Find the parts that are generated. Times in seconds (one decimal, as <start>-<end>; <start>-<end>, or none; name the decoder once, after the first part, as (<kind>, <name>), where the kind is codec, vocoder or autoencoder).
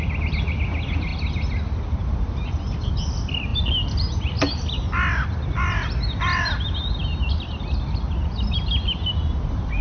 none